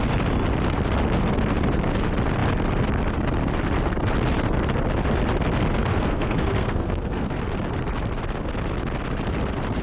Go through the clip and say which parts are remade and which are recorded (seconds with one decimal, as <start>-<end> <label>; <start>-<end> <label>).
0.0-5.9 recorded; 5.9-7.4 remade; 7.4-9.8 recorded